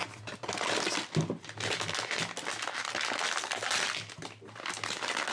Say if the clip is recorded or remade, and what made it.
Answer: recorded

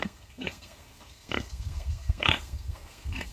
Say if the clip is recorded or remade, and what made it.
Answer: remade, codec, SNAC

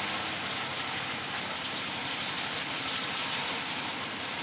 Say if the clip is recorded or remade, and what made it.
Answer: recorded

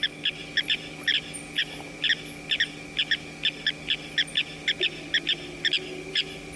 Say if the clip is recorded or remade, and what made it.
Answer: recorded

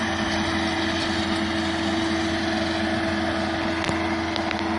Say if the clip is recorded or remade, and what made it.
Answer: recorded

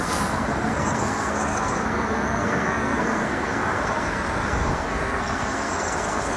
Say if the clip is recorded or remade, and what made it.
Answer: remade, codec, SNAC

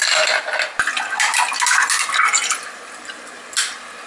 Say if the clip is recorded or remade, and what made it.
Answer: recorded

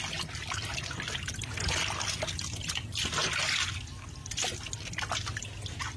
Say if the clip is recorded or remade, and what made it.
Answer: recorded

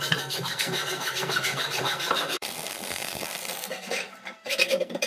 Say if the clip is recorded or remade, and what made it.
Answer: remade, codec, SNAC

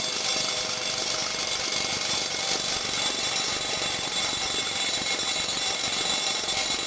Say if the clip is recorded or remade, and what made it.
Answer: recorded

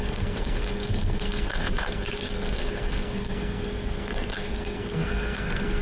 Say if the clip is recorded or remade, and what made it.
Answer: remade, codec, SNAC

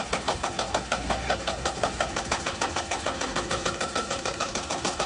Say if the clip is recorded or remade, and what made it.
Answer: remade, codec, SNAC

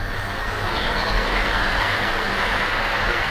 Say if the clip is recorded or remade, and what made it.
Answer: remade, codec, SNAC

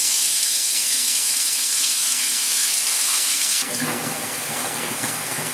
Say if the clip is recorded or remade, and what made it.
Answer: remade, codec, SNAC